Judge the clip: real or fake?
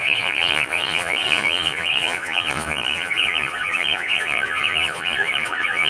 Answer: fake